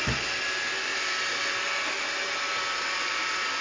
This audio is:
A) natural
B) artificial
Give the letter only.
A